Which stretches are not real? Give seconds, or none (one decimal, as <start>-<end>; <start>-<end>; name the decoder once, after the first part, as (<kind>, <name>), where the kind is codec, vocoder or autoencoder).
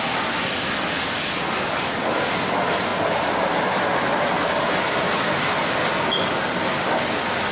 none